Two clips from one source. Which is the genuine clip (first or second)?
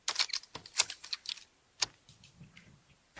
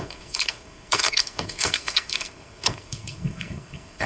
first